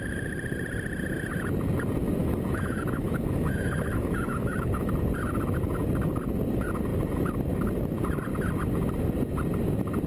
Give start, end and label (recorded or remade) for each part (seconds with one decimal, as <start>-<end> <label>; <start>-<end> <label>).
0.0-2.2 recorded; 2.2-4.9 remade; 4.9-10.1 recorded